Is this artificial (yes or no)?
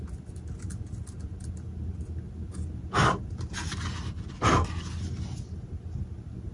no